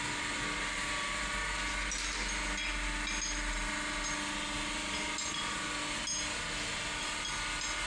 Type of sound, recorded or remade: recorded